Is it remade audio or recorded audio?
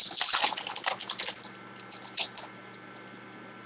recorded